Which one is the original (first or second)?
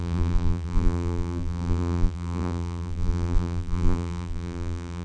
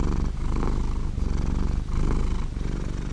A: second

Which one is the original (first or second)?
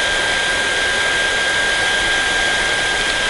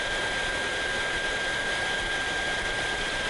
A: first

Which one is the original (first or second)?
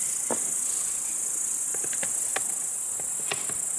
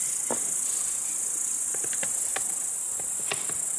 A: first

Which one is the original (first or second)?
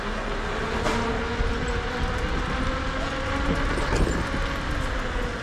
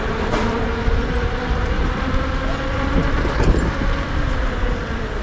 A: first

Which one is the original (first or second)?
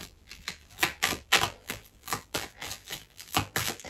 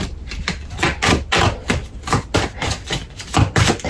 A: second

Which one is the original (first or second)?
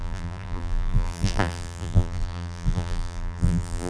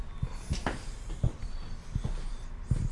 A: second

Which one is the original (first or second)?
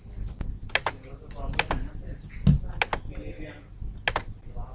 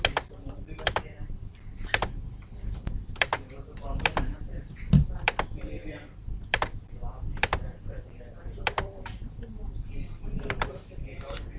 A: first